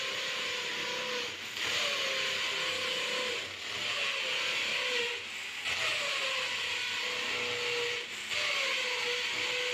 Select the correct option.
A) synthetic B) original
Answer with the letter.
B